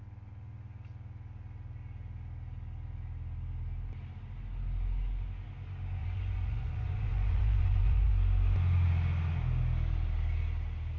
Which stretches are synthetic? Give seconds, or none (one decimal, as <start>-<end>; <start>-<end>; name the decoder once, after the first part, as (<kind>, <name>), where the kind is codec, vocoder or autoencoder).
6.0-8.1 (vocoder, Vocos)